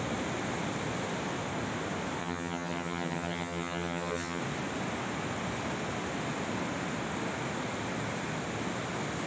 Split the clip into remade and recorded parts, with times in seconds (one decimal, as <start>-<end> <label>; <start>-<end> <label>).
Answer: 0.0-2.2 recorded; 2.2-4.4 remade; 4.4-9.3 recorded